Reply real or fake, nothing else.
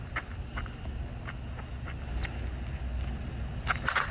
real